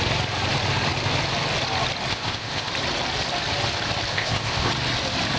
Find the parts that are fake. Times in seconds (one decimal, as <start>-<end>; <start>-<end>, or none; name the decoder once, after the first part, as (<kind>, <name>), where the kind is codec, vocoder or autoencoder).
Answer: 2.1-2.7 (codec, ZipCodec); 4.1-4.7